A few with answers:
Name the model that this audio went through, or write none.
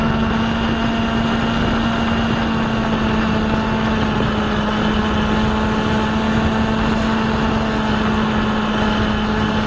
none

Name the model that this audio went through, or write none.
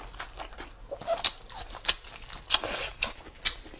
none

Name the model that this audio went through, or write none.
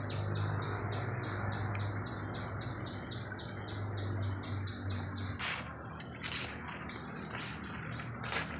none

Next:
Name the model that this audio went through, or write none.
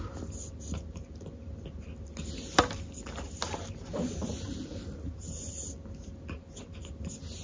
none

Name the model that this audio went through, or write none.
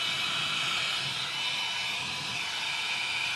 none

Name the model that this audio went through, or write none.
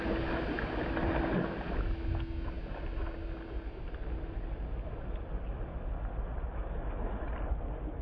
none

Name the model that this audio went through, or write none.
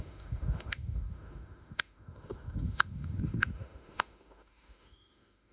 autoencoder, DAC-VAE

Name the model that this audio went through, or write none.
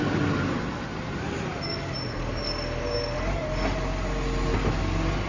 none